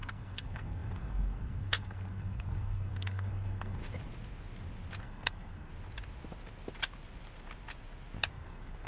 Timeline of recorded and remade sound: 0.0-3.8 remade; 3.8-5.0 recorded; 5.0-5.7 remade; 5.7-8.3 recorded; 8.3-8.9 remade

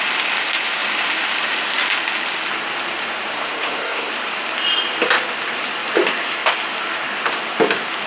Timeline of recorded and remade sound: 0.0-3.3 recorded; 3.3-4.1 remade; 4.1-8.1 recorded

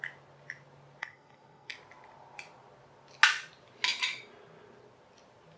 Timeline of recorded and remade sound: 0.0-1.0 recorded; 1.0-1.7 remade; 1.7-5.6 recorded

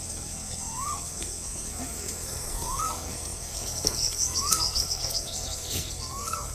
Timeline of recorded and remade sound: 0.0-6.5 remade

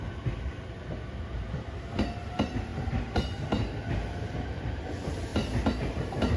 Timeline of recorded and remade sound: 0.0-6.4 recorded

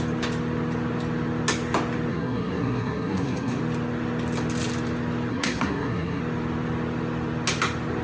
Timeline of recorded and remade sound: 0.0-2.1 recorded; 2.1-3.6 remade; 3.6-5.3 recorded; 5.3-6.2 remade; 6.2-8.0 recorded

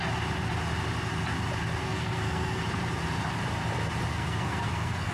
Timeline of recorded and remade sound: 0.0-1.8 recorded; 1.8-2.6 remade; 2.6-4.1 recorded; 4.1-5.1 remade

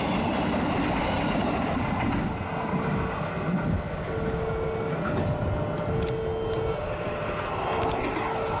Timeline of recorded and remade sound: 0.0-8.6 recorded